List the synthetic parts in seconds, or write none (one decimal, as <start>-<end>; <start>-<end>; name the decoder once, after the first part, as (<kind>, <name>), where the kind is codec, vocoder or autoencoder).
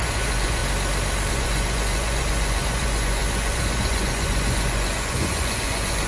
0.0-0.6 (vocoder, Vocos); 1.3-6.1